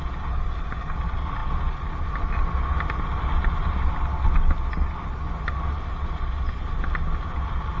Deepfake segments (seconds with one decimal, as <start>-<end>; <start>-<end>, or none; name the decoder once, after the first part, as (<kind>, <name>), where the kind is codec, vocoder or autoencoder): none